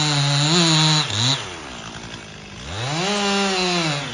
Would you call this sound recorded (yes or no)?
yes